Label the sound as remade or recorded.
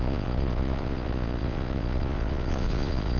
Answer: remade